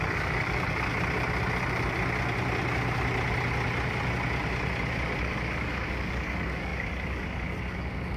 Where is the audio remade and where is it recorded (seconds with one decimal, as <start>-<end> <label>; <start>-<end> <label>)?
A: 0.0-0.9 remade; 0.9-5.2 recorded; 5.2-8.2 remade